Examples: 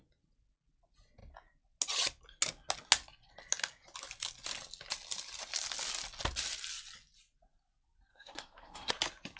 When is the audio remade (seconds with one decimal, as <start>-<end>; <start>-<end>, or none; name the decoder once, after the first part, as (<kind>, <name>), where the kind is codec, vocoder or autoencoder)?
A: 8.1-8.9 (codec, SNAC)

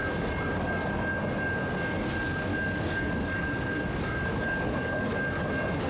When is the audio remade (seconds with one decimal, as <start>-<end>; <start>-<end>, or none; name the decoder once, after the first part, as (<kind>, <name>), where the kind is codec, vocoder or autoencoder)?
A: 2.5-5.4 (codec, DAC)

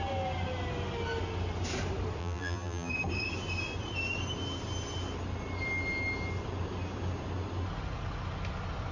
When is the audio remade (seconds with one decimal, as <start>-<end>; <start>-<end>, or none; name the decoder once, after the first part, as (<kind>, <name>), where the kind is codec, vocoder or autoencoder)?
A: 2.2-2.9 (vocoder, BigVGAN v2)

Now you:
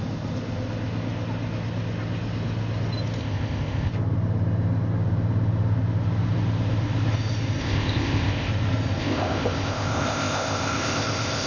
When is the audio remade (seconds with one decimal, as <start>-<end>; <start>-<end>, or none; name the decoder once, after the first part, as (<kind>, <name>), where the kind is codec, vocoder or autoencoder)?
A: 3.2-3.9 (codec, ZipCodec); 7.6-8.5; 9.0-11.5

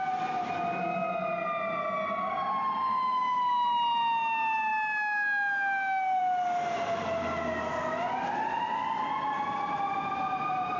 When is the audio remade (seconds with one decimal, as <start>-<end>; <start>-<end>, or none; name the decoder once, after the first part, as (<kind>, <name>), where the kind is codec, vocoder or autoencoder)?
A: none

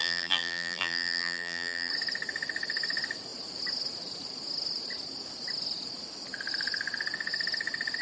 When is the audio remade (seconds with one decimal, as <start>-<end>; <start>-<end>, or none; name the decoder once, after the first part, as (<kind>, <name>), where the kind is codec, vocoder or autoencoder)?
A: 0.0-1.9 (vocoder, BigVGAN v2)

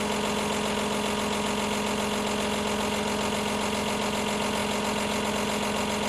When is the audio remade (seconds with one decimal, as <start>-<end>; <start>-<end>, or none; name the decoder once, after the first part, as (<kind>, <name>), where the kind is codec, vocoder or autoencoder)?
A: none

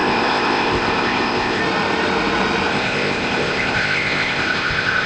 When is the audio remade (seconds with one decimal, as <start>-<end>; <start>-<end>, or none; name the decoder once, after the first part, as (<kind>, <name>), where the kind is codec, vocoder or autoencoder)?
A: 0.0-1.6 (codec, ZipCodec); 2.7-5.1